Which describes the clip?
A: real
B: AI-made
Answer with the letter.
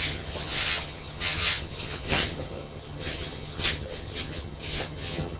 B